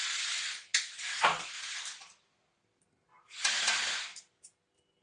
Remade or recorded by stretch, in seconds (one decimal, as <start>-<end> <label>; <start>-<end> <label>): 0.0-5.0 recorded

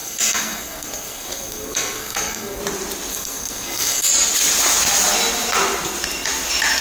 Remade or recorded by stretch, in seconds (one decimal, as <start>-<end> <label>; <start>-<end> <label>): 0.0-2.6 remade; 2.6-3.1 recorded; 3.1-4.1 remade; 4.1-6.8 recorded

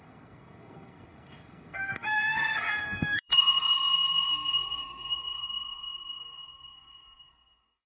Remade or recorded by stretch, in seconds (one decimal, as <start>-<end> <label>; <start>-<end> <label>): 0.0-7.9 remade

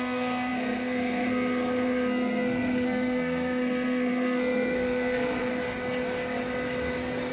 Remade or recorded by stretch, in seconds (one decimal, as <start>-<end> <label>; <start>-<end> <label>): 0.0-5.5 remade; 5.5-7.3 recorded

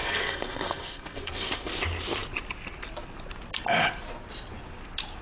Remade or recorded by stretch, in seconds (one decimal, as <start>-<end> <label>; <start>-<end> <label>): 0.0-1.7 remade; 1.7-5.2 recorded

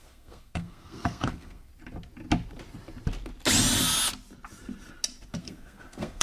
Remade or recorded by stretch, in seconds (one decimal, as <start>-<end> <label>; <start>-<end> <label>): 0.0-1.7 remade; 1.7-5.4 recorded; 5.4-6.2 remade

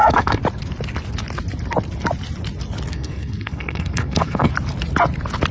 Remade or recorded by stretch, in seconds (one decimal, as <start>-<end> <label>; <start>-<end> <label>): 0.0-0.4 remade; 0.4-2.9 recorded; 2.9-4.5 remade; 4.5-5.5 recorded